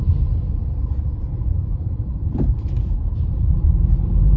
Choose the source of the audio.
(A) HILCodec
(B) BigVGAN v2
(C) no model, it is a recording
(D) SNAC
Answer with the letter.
B